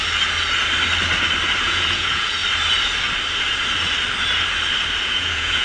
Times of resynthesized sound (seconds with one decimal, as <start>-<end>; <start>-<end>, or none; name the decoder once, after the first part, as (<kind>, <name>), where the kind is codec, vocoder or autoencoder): 1.6-2.4 (vocoder, Vocos); 5.0-5.6